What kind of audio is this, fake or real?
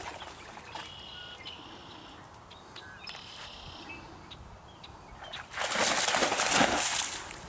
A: real